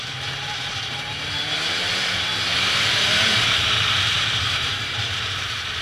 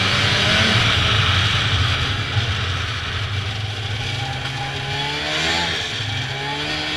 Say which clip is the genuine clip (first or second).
second